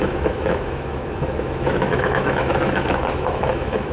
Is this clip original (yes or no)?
no